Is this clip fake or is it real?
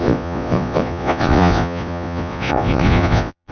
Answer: fake